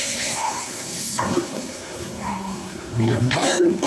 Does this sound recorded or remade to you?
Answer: remade